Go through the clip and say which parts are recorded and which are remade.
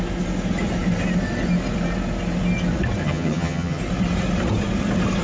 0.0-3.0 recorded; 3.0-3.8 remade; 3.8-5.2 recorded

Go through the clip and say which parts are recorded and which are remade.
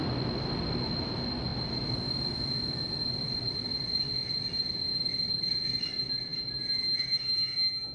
0.0-7.9 recorded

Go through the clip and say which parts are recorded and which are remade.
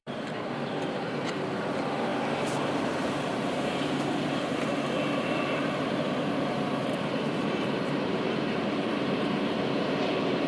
0.0-2.1 remade; 2.1-2.7 recorded; 2.7-10.5 remade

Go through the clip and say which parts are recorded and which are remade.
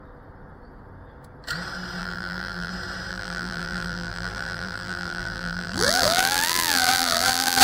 0.0-2.0 recorded; 2.0-2.7 remade; 2.7-3.1 recorded; 3.1-7.6 remade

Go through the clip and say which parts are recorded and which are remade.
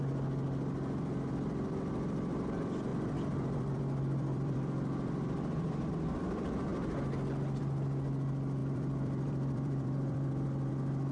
0.0-2.9 recorded; 2.9-5.9 remade; 5.9-8.6 recorded; 8.6-10.7 remade; 10.7-11.1 recorded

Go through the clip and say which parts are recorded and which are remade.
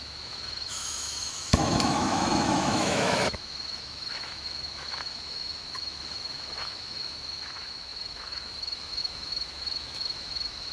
0.0-10.7 remade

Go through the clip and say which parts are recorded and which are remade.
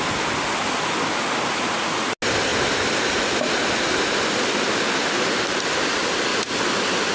0.0-7.1 recorded